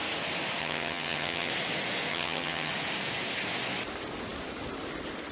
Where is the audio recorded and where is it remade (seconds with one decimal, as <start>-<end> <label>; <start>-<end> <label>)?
0.0-0.6 recorded; 0.6-1.5 remade; 1.5-2.1 recorded; 2.1-2.7 remade; 2.7-5.3 recorded